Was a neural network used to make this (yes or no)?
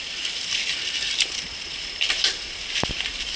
no